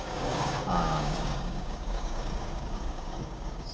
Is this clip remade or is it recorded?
remade